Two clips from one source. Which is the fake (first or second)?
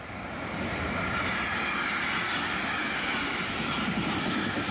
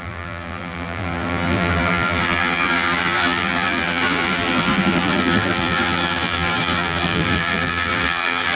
second